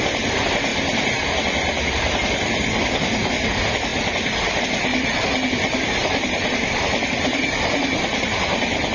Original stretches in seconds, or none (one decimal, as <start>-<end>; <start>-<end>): 0.0-6.0; 6.6-8.9